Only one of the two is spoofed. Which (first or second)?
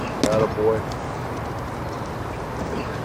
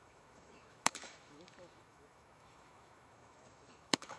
second